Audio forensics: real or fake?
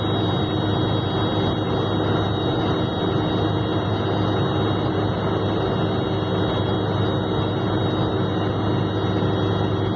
real